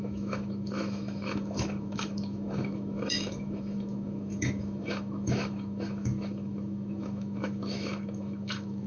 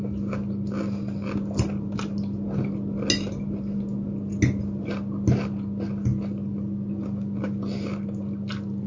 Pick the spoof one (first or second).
first